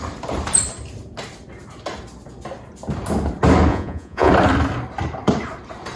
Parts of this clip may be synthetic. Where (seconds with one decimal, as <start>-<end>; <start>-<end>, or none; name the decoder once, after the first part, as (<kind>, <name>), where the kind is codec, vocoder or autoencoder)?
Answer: 3.7-4.3 (vocoder, Vocos)